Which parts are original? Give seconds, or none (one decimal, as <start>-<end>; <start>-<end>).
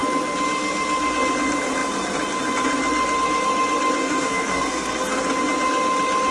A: 0.0-4.0; 5.2-6.3